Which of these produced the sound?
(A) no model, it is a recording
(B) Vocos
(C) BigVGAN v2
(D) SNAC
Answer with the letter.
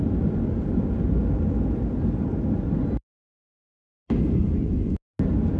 A